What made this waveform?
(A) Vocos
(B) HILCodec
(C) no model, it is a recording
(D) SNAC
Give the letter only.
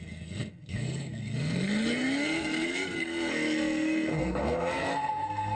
D